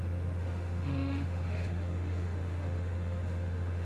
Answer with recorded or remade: remade